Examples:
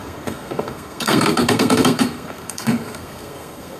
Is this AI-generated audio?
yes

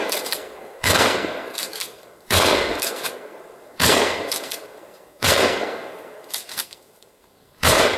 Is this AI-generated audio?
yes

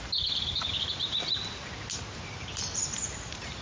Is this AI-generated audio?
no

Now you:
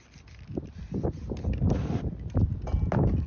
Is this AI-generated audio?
no